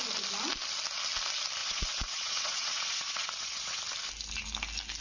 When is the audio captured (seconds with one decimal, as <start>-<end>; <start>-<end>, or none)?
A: 0.0-1.6; 3.8-5.0